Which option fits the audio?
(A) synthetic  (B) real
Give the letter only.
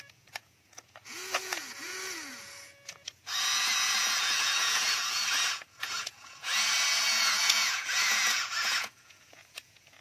A